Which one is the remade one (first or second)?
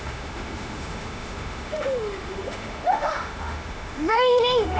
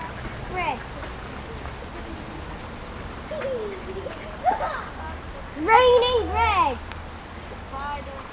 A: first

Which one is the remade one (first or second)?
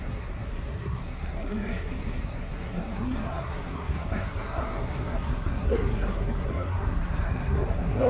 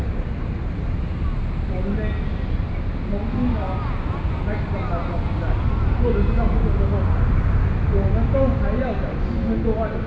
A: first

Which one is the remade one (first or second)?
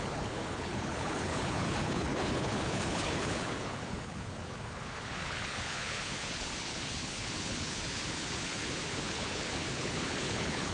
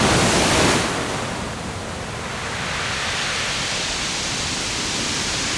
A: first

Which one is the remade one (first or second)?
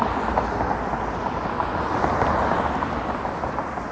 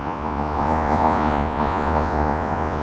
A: second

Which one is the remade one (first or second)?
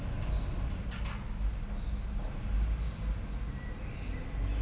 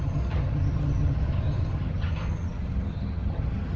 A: second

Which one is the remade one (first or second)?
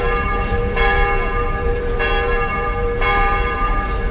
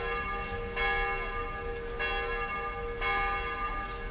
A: first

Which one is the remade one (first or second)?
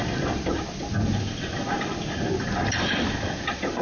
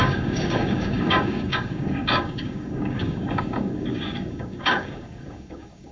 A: second